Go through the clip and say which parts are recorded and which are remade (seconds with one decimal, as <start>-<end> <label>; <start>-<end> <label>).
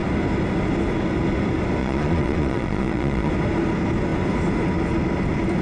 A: 0.0-1.8 recorded; 1.8-3.3 remade; 3.3-5.6 recorded